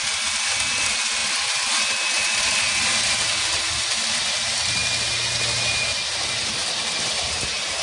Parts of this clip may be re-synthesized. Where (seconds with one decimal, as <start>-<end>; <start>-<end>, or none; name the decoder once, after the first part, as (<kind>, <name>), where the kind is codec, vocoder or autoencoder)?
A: none

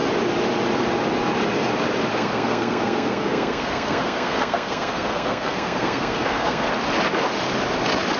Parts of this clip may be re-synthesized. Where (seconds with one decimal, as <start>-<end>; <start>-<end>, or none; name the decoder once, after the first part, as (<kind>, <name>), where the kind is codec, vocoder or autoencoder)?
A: 2.1-6.7 (codec, SNAC)

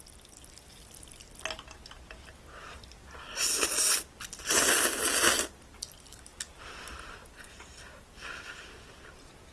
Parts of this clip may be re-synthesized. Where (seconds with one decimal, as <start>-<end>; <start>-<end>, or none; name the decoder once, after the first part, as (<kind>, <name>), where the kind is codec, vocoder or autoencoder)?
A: 2.6-3.4 (vocoder, BigVGAN v2); 6.3-8.4